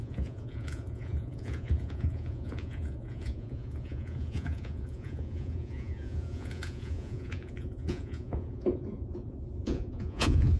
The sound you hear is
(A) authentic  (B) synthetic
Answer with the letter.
B